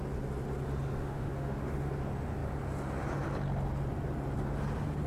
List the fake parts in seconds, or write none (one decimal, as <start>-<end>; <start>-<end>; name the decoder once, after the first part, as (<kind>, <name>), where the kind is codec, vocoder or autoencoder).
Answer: 1.0-1.9 (autoencoder, DAC-VAE)